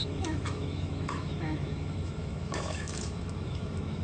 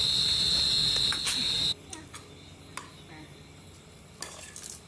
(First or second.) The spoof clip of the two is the first